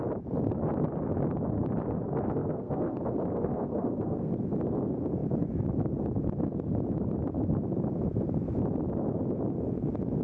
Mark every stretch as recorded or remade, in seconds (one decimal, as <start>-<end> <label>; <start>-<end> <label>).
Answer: 0.0-2.4 recorded; 2.4-3.0 remade; 3.0-3.4 recorded; 3.4-4.3 remade; 4.3-10.2 recorded